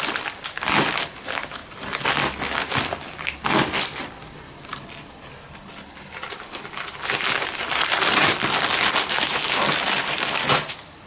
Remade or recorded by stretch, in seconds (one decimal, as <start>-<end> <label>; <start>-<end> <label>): 0.0-7.6 recorded; 7.6-8.3 remade; 8.3-11.1 recorded